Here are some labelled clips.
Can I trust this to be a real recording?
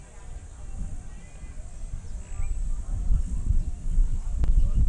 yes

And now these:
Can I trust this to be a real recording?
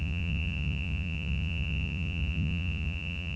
no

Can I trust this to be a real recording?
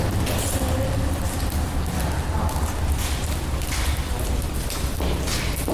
yes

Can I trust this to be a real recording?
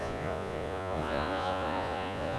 no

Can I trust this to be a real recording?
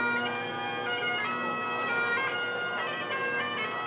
yes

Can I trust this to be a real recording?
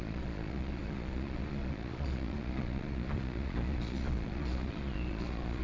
no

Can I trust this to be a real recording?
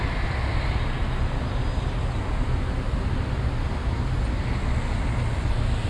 yes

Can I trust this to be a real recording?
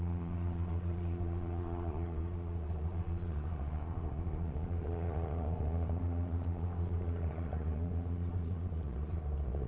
no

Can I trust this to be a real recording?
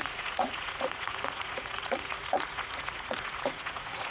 no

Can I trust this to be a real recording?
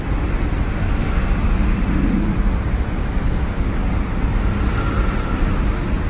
yes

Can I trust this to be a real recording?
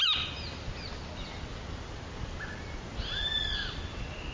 yes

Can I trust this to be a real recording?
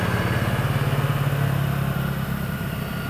yes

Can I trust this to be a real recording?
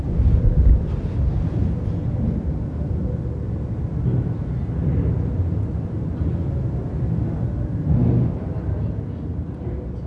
yes